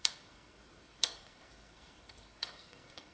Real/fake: fake